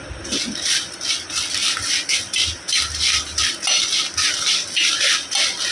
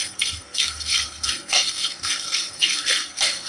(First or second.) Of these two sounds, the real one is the first